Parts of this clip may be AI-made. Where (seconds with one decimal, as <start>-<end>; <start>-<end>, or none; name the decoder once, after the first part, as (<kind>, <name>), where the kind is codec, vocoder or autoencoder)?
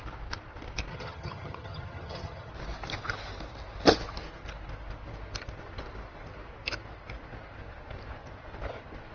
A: 0.9-2.5 (vocoder, HiFi-GAN)